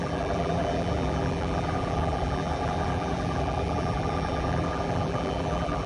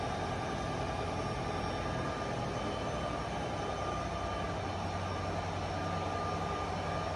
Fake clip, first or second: first